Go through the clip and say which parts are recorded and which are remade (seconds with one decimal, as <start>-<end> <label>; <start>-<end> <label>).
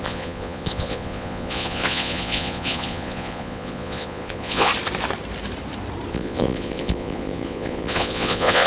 0.0-4.7 remade; 4.7-6.1 recorded; 6.1-8.7 remade